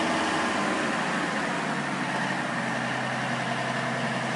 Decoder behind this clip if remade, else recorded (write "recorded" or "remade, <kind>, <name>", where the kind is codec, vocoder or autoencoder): recorded